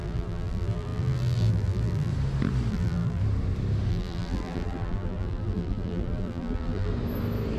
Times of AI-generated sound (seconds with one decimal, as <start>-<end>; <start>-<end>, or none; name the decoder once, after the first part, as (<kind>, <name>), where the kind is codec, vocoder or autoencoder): 0.0-2.1 (vocoder, BigVGAN v2); 2.7-3.2; 3.9-6.9

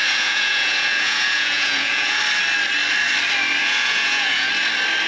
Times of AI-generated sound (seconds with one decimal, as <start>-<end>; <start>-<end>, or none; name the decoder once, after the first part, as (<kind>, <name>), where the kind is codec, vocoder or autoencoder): 0.0-2.2 (vocoder, Vocos); 3.6-4.5

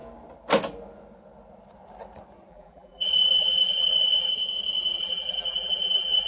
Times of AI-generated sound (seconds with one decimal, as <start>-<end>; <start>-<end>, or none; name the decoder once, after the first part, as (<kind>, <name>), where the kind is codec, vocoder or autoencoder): 2.5-4.3 (vocoder, BigVGAN v2); 5.0-6.3

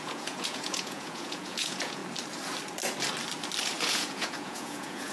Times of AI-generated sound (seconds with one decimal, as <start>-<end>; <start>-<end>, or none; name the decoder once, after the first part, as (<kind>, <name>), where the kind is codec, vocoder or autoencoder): 0.0-2.0 (vocoder, Vocos); 3.6-5.1

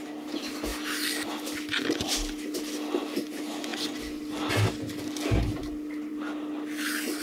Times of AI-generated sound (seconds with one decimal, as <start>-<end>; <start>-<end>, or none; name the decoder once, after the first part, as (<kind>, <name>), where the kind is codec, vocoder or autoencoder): none